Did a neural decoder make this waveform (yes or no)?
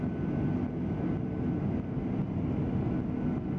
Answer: no